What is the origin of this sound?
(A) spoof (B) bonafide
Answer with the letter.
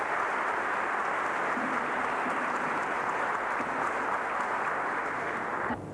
B